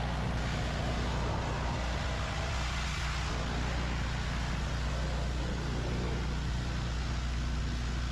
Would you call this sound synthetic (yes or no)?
no